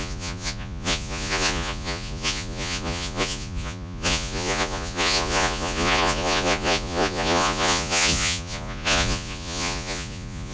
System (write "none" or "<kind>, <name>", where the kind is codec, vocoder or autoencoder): vocoder, Vocos